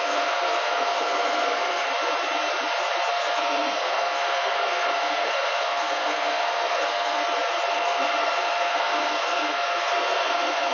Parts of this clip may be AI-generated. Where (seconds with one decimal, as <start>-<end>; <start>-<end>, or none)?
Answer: 0.0-1.9; 3.1-7.2; 7.7-10.7

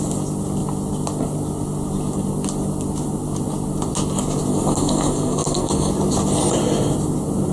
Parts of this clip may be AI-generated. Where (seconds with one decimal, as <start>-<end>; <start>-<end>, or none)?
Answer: 4.5-5.9